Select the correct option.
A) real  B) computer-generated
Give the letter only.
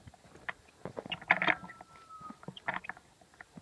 A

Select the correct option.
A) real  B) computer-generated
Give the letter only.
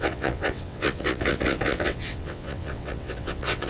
B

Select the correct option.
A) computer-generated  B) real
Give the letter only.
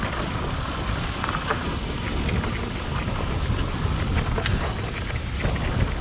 B